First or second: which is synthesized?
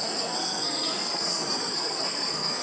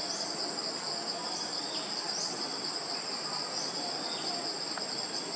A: first